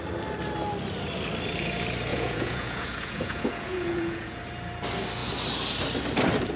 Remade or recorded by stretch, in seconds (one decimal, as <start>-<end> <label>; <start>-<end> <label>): 0.0-2.1 recorded; 2.1-4.4 remade; 4.4-6.6 recorded